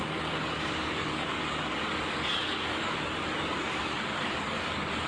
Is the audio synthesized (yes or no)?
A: yes